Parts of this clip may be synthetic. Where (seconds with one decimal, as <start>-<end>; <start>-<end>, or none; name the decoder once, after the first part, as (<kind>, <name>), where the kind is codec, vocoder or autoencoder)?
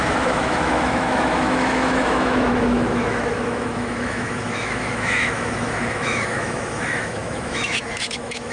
0.0-8.5 (autoencoder, DAC-VAE)